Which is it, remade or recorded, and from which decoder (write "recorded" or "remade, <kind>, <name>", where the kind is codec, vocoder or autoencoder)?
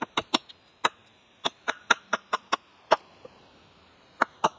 recorded